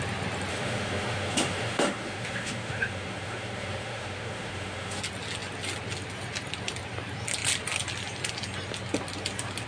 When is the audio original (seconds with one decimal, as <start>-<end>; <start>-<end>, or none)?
0.0-0.5; 5.0-9.7